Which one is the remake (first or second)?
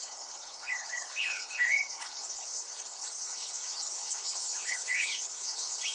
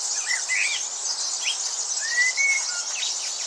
first